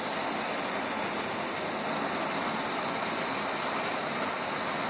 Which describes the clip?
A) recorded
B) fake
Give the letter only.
A